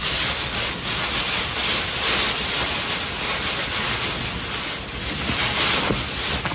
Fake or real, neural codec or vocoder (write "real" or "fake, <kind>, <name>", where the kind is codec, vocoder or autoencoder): real